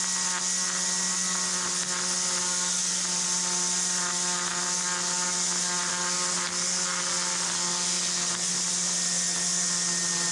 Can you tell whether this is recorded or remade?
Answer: recorded